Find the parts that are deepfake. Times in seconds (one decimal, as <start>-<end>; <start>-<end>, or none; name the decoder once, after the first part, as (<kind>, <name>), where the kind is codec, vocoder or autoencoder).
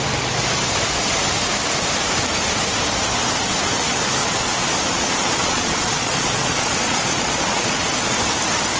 4.2-8.2 (vocoder, Vocos)